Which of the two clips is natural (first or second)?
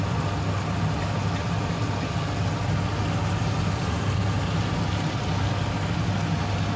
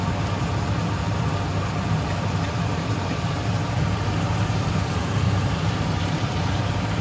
first